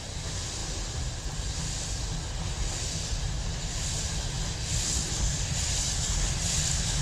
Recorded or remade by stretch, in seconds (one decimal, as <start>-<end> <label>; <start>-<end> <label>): 0.0-7.0 recorded